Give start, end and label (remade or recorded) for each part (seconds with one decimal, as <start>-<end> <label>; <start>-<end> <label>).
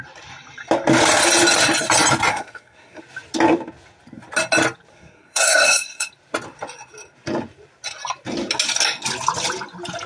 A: 0.0-2.3 recorded; 2.3-3.0 remade; 3.0-4.9 recorded; 4.9-6.1 remade; 6.1-10.1 recorded